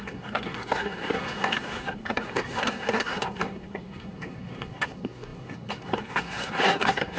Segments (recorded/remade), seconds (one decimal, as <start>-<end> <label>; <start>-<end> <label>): 0.0-7.2 remade